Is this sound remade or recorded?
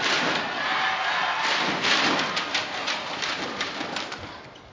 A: recorded